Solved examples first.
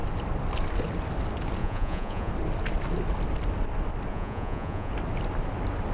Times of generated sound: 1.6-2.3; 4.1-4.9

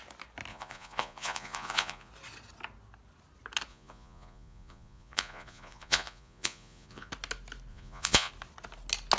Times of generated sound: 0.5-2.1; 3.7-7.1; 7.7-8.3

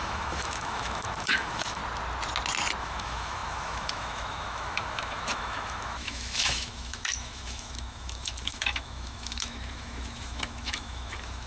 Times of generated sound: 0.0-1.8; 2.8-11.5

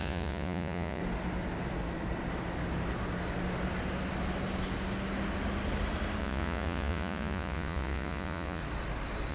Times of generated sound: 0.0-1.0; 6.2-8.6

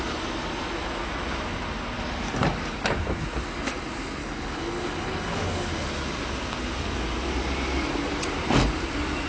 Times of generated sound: 4.2-5.9

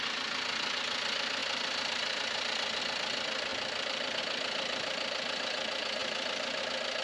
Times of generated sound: 1.4-2.8; 3.5-4.2; 6.0-6.6

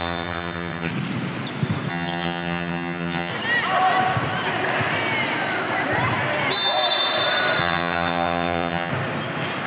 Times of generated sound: 0.0-0.9; 1.9-3.3; 7.6-8.9

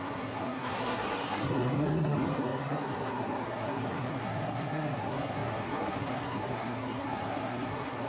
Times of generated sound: 0.0-8.1